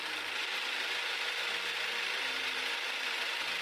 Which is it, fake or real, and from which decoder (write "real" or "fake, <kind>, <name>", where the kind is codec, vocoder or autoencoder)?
fake, vocoder, BigVGAN v2